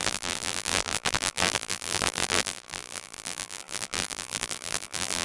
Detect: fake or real fake